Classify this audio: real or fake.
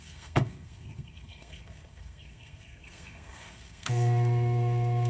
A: fake